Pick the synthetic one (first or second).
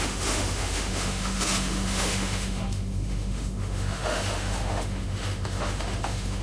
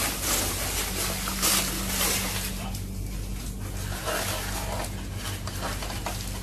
first